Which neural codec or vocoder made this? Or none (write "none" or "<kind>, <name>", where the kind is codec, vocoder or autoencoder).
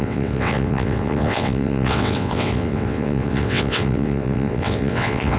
vocoder, WaveNeXt